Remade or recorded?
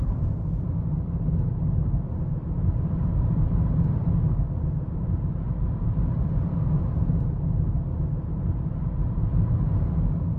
remade